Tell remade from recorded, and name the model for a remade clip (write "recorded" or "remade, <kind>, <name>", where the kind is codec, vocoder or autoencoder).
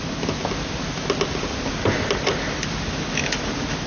recorded